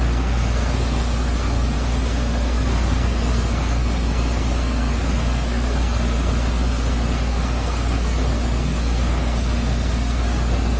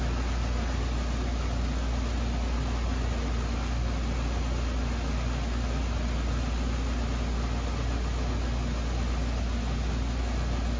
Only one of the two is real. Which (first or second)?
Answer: second